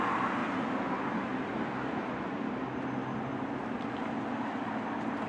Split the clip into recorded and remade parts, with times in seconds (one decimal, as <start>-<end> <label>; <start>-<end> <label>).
0.0-5.3 recorded